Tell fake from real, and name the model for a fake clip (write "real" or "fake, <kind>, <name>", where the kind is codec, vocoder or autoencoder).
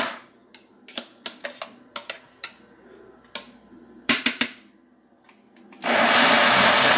real